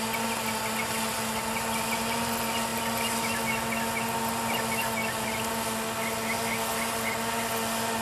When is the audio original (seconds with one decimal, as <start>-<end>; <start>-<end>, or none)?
0.0-8.0